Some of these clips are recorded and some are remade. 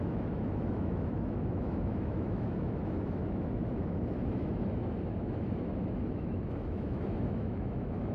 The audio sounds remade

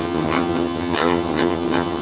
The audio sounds remade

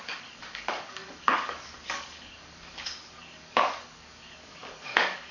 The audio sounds remade